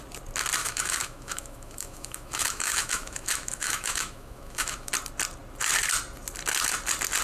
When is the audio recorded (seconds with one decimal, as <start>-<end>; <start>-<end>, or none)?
0.0-0.6; 4.9-7.2